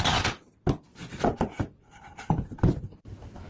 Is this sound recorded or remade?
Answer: recorded